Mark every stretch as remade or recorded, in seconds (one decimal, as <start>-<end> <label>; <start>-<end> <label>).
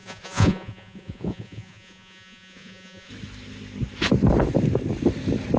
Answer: 0.0-3.1 remade; 3.1-5.6 recorded